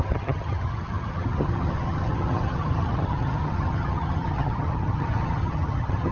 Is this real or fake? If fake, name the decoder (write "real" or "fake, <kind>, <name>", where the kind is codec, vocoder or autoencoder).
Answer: fake, vocoder, HiFi-GAN